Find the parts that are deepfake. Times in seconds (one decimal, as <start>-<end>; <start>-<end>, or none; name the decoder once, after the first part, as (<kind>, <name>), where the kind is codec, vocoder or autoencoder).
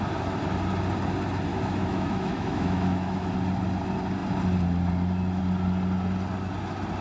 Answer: 1.5-3.3 (autoencoder, DAC-VAE)